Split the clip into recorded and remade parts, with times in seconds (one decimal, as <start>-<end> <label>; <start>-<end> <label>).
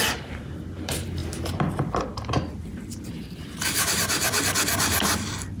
0.0-1.2 remade; 1.2-2.6 recorded; 2.6-4.2 remade; 4.2-5.6 recorded